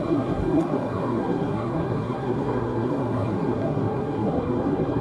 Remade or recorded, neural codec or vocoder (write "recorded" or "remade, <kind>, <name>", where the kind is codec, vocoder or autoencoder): remade, codec, SNAC